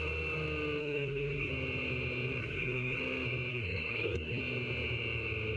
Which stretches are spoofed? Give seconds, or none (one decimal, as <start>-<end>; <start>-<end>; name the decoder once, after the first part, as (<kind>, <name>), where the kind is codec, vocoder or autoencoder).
0.8-1.5 (codec, SNAC); 2.4-3.0; 3.5-4.4